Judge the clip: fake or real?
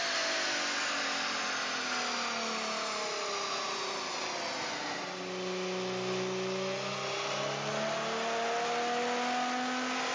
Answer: real